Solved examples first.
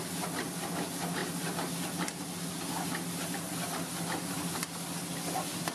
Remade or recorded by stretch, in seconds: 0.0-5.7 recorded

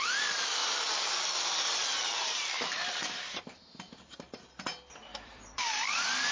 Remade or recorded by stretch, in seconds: 0.0-0.6 recorded; 0.6-3.4 remade; 3.4-5.1 recorded; 5.1-5.6 remade; 5.6-6.3 recorded

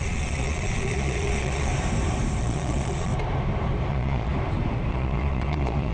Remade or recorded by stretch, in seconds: 0.0-1.7 remade; 1.7-2.4 recorded; 2.4-3.1 remade; 3.1-3.9 recorded; 3.9-4.3 remade; 4.3-4.9 recorded; 4.9-5.9 remade

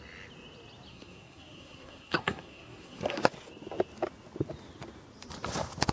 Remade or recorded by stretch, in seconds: 0.0-0.9 recorded; 0.9-3.2 remade; 3.2-5.9 recorded